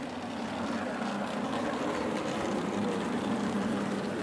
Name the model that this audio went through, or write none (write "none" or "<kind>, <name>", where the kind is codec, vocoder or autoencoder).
none